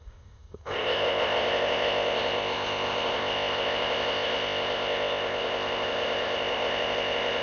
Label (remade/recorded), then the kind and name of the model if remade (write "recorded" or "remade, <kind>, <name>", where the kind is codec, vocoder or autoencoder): remade, codec, ZipCodec